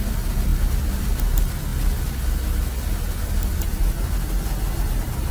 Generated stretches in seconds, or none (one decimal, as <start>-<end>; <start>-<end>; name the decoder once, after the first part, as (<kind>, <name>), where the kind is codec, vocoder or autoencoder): none